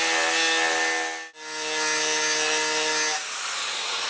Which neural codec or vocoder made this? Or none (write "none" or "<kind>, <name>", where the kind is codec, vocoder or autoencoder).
none